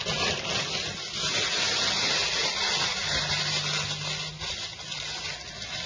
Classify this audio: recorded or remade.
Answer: recorded